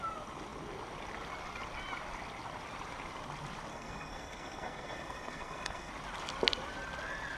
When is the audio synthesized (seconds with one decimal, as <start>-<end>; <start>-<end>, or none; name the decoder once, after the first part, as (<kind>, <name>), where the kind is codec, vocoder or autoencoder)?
3.7-5.9 (codec, SNAC)